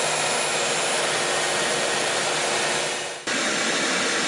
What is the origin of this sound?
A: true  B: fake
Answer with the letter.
A